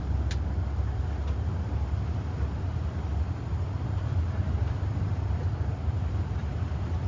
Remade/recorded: recorded